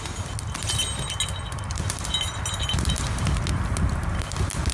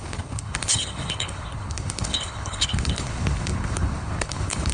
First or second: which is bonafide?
first